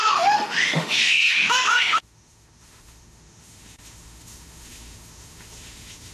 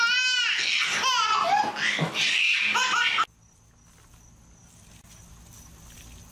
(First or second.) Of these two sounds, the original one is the second